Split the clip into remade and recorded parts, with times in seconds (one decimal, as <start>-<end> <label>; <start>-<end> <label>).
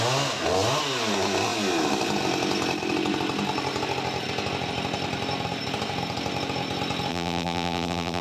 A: 0.0-7.1 recorded; 7.1-8.2 remade